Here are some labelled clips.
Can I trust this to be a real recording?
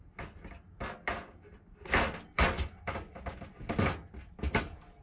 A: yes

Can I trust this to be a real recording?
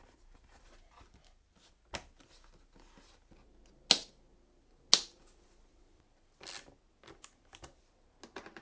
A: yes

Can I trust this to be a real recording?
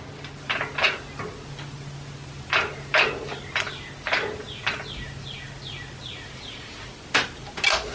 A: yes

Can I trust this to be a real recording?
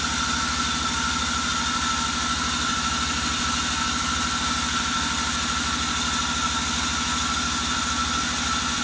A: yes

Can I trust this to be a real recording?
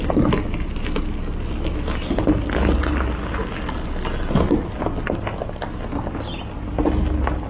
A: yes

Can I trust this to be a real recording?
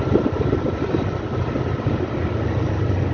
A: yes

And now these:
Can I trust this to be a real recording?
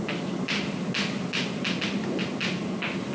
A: yes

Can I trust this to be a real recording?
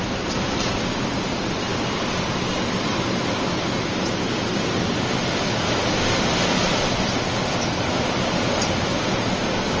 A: yes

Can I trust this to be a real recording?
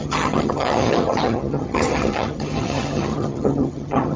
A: no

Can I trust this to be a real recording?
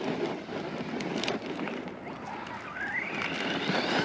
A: yes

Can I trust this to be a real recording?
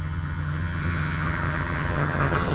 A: no